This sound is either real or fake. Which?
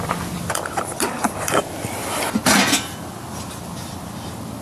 fake